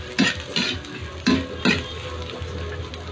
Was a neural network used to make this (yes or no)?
no